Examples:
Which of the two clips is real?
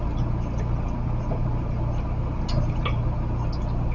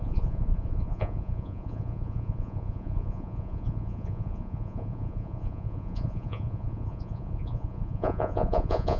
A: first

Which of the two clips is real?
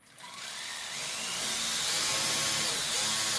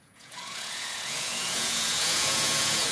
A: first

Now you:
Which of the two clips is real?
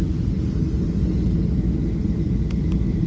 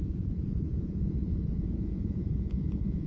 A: first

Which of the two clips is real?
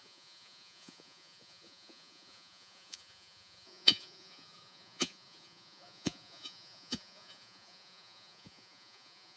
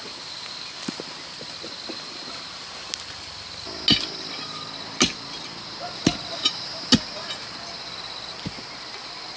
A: second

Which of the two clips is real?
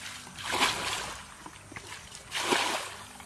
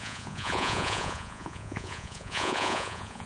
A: first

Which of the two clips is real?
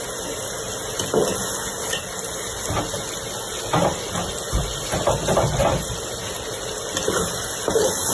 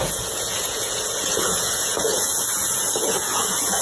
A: first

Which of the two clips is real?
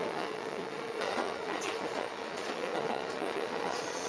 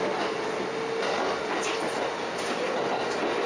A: second